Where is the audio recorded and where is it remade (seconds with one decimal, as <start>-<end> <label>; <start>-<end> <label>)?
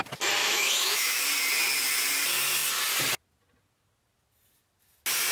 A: 0.0-0.4 recorded; 0.4-1.2 remade; 1.2-5.3 recorded